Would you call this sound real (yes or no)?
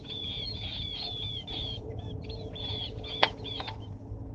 no